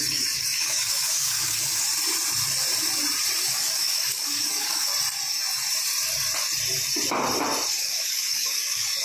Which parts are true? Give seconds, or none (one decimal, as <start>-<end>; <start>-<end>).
1.9-3.5; 4.9-7.7